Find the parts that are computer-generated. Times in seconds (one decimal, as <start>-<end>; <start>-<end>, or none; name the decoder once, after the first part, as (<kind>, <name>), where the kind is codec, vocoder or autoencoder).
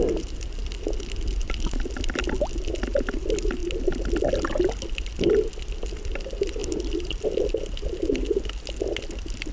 3.6-4.2 (vocoder, BigVGAN v2); 6.6-7.6